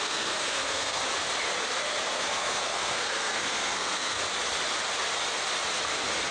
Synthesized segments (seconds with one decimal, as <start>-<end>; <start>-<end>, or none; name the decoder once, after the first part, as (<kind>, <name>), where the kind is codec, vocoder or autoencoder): 0.0-1.0 (codec, SNAC); 2.1-4.2